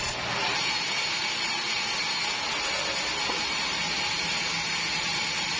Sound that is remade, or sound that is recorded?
recorded